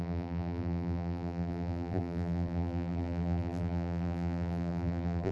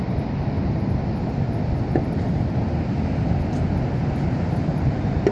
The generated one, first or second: first